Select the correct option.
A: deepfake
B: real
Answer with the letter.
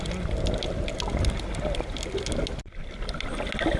B